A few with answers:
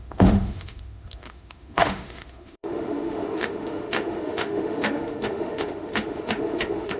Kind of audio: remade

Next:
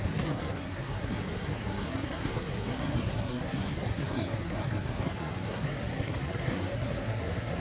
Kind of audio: remade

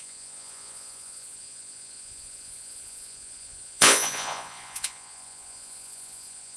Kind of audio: remade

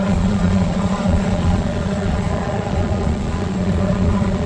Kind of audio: remade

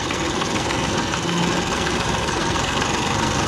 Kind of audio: remade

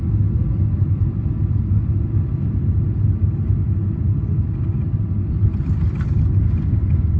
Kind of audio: recorded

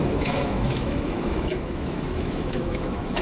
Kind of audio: remade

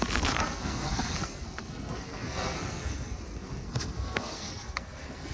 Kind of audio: remade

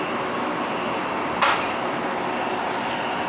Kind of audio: recorded